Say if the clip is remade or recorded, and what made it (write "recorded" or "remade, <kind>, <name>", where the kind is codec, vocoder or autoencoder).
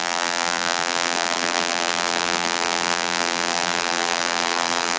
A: remade, vocoder, BigVGAN v2